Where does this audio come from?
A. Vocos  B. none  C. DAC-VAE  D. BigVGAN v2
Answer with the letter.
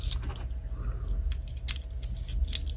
B